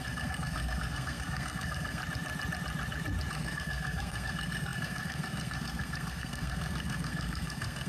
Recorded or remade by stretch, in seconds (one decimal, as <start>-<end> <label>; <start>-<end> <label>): 0.0-2.0 remade; 2.0-3.3 recorded; 3.3-7.9 remade